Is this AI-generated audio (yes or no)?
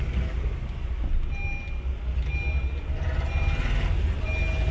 no